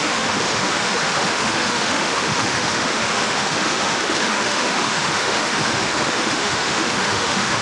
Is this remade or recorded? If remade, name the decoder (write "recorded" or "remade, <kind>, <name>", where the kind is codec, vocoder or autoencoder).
remade, autoencoder, DAC-VAE